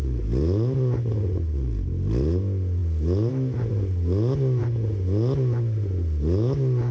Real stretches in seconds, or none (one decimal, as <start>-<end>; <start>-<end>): 0.0-6.9